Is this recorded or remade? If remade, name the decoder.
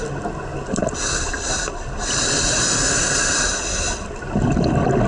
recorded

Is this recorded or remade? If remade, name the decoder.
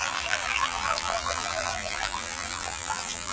remade, vocoder, BigVGAN v2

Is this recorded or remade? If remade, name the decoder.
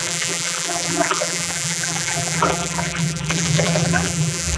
remade, vocoder, BigVGAN v2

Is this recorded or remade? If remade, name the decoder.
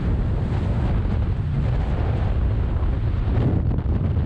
recorded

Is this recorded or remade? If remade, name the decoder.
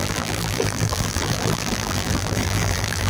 remade, vocoder, BigVGAN v2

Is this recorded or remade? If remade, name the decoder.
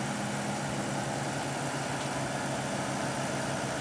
recorded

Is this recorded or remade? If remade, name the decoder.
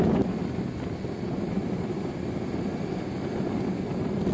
recorded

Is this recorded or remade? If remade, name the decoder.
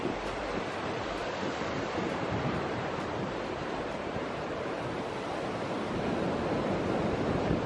remade, vocoder, BigVGAN v2